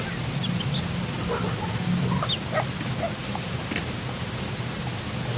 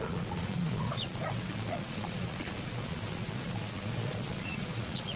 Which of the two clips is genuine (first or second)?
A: first